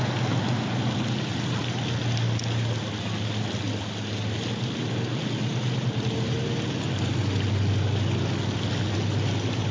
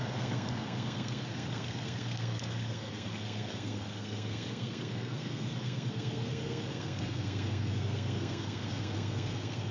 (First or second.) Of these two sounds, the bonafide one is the first